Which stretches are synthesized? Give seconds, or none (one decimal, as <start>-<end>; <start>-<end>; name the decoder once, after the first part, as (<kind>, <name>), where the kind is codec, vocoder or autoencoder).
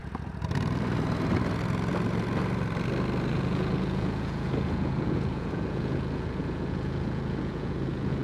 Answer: 3.3-8.2 (vocoder, Vocos)